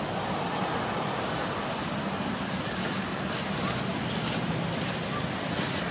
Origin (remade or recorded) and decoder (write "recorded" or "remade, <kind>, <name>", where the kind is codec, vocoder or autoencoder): recorded